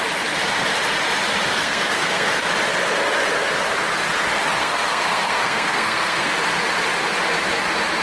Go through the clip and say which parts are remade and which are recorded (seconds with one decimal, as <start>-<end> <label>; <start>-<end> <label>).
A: 0.0-1.5 recorded; 1.5-2.5 remade; 2.5-4.6 recorded; 4.6-6.3 remade; 6.3-8.0 recorded